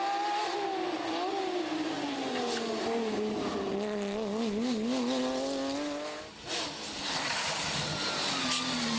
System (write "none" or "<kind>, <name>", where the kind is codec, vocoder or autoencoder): none